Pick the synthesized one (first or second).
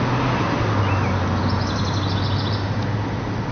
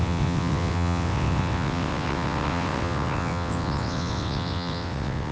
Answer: second